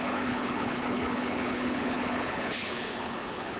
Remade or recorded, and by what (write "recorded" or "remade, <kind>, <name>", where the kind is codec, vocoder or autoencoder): remade, codec, HILCodec